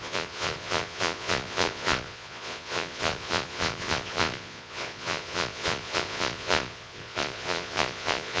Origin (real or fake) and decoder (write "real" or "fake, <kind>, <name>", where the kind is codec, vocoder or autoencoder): fake, vocoder, Vocos